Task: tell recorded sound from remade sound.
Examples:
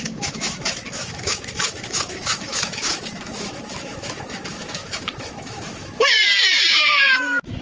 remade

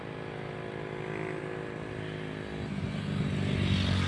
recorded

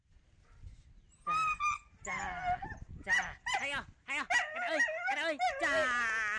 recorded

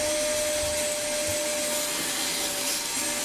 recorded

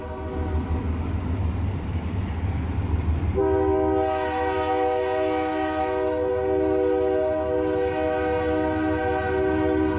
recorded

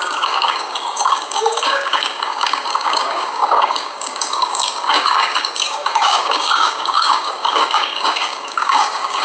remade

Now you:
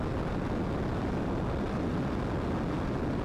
recorded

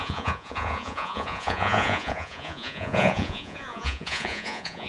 remade